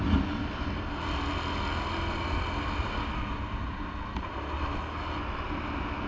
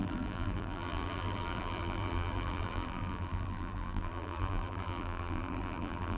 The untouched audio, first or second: first